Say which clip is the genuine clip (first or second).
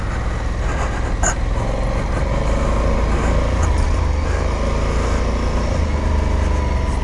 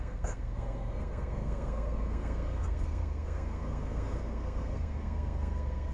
first